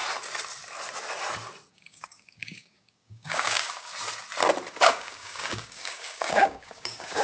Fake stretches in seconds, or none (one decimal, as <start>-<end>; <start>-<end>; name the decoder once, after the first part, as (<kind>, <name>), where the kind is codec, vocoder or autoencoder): 1.7-3.9 (codec, DAC); 4.7-7.2